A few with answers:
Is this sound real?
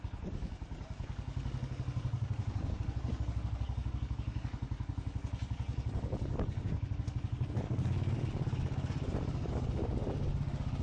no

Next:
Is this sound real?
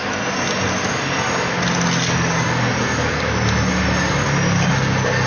yes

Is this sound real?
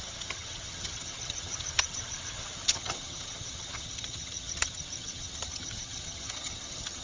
no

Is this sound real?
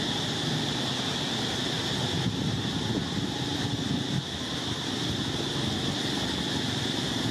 yes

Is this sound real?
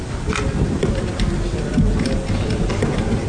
yes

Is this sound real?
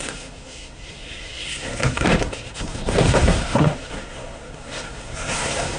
no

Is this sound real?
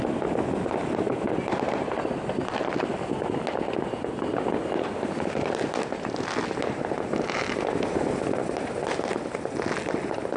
yes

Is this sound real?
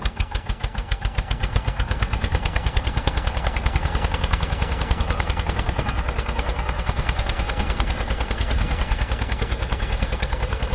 no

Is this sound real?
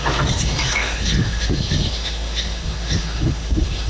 no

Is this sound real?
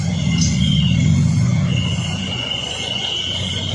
no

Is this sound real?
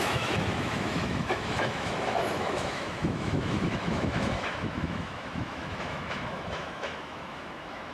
no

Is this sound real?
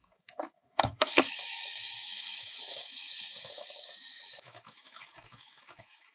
no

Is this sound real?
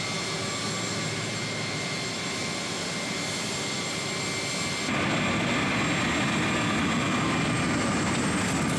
yes